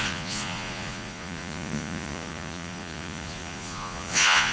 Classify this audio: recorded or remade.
remade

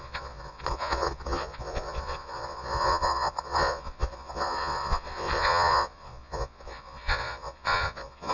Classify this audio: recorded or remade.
remade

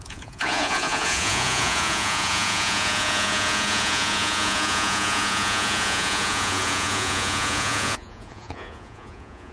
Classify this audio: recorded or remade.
remade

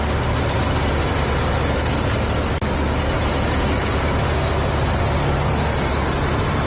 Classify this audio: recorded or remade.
recorded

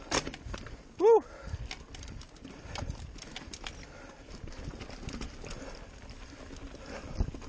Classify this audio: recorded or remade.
recorded